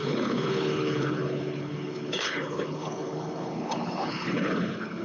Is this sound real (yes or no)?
no